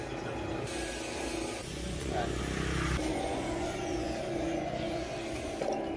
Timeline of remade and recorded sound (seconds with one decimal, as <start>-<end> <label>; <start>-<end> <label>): 0.0-1.6 recorded; 1.6-2.4 remade; 2.4-3.1 recorded; 3.1-5.5 remade; 5.5-6.0 recorded

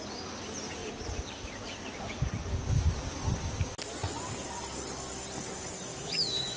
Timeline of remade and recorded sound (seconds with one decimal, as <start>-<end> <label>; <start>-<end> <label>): 0.0-5.9 recorded; 5.9-6.6 remade

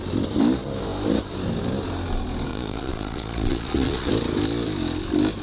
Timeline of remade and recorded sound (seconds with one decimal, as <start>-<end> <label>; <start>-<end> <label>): 0.0-2.5 recorded; 2.5-4.1 remade; 4.1-5.4 recorded